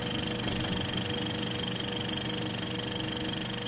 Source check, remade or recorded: recorded